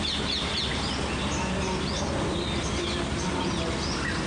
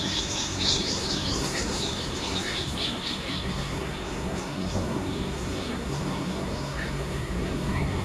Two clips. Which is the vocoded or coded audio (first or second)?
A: second